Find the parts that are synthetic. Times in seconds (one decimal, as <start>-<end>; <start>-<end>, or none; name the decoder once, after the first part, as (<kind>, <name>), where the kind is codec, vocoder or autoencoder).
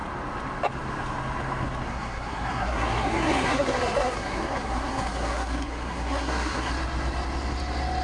1.9-6.7 (codec, SNAC)